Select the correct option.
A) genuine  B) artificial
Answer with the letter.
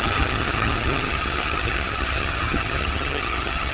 B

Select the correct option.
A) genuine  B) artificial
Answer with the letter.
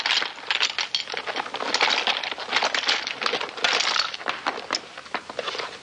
A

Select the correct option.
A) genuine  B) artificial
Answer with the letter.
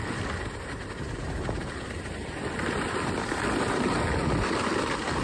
A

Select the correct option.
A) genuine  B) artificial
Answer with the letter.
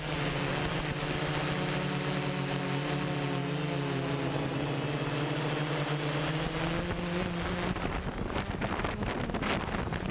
A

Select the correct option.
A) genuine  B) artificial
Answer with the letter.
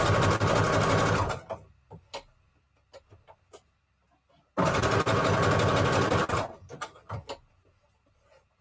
A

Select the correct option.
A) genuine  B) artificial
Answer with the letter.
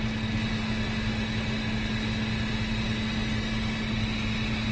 A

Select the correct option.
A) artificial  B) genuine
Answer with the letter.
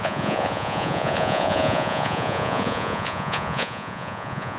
A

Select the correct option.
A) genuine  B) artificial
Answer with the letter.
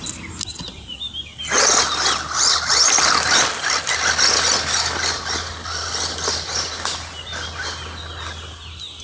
A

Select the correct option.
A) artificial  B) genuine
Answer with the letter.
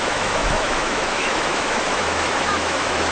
A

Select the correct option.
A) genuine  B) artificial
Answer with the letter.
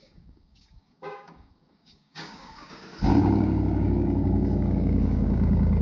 B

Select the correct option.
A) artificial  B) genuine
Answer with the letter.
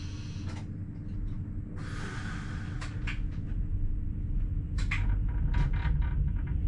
B